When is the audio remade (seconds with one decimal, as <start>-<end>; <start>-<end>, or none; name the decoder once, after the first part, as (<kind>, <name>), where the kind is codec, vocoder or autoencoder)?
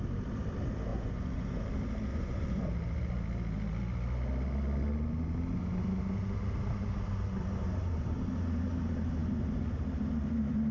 0.9-1.6 (vocoder, Vocos); 2.1-2.7